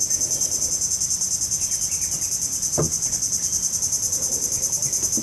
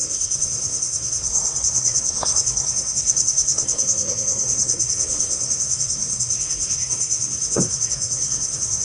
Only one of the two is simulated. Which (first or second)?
second